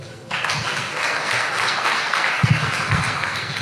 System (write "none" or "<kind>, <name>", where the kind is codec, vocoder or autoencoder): codec, SNAC